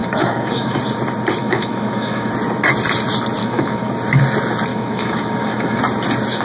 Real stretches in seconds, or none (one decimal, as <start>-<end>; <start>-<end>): 0.8-1.4; 2.3-3.4; 3.9-4.7; 5.8-6.4